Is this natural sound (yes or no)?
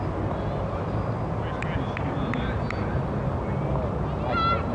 yes